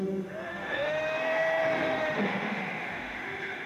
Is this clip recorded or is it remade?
remade